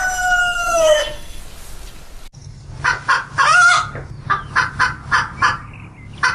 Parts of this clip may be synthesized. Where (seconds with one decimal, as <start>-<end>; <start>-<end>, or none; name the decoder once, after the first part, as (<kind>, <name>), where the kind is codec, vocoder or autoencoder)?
0.4-1.4 (codec, SNAC)